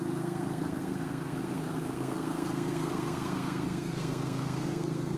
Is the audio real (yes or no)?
no